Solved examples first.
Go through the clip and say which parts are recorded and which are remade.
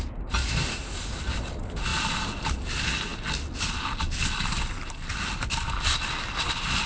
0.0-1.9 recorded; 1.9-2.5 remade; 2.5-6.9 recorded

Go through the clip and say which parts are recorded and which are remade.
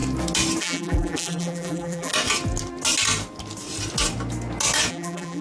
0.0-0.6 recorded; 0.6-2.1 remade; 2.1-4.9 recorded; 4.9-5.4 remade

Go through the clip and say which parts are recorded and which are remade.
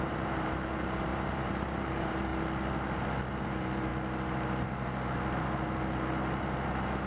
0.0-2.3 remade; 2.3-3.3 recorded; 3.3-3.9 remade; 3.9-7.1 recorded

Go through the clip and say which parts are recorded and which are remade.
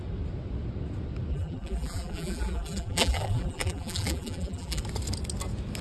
0.0-1.3 recorded; 1.3-4.8 remade; 4.8-5.8 recorded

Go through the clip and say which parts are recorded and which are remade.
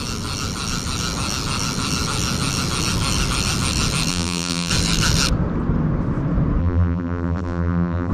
0.0-4.1 recorded; 4.1-4.7 remade; 4.7-6.6 recorded; 6.6-8.1 remade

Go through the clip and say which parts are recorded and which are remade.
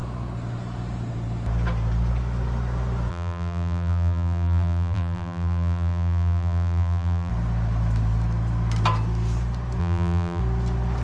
0.0-3.1 recorded; 3.1-7.3 remade; 7.3-9.8 recorded; 9.8-10.4 remade; 10.4-11.0 recorded